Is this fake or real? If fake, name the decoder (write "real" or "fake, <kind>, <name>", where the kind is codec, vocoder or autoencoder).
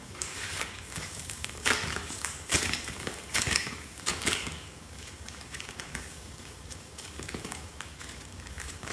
fake, codec, DAC